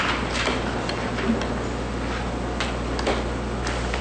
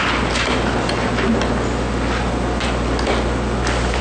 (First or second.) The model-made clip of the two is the first